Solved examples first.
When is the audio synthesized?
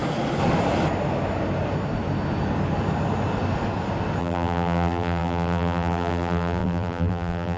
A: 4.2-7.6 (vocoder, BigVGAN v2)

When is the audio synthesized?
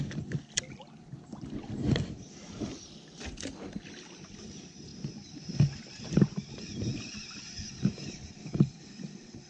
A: 0.0-4.9 (vocoder, BigVGAN v2); 5.8-9.5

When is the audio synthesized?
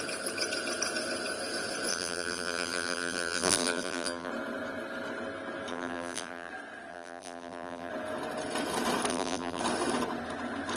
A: 1.9-4.3 (vocoder, BigVGAN v2); 5.7-6.5; 6.9-7.9; 9.1-9.6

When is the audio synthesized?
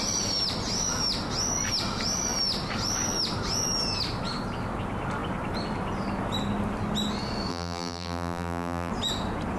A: 7.5-8.9 (vocoder, BigVGAN v2)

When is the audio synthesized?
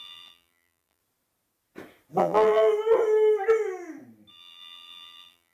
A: 0.0-1.0 (vocoder, BigVGAN v2); 2.2-2.7; 4.3-5.5